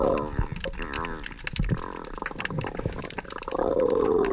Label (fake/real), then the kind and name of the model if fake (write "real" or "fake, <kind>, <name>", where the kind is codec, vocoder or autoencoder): real